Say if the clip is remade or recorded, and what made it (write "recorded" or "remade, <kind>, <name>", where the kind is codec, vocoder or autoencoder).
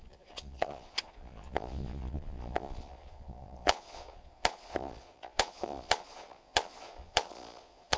remade, vocoder, Vocos